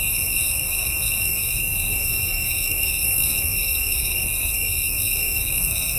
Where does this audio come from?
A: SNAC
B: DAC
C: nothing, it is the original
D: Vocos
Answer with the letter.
A